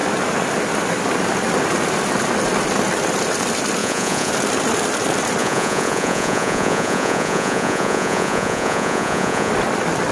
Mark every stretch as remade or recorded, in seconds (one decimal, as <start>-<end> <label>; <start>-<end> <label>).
0.0-3.8 recorded; 3.8-4.3 remade; 4.3-5.4 recorded; 5.4-9.5 remade; 9.5-10.1 recorded